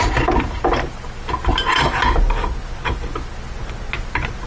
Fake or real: real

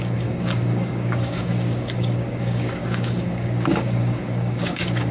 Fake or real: fake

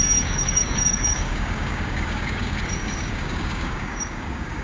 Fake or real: fake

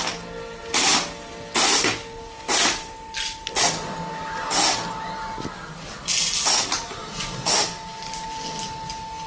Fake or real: real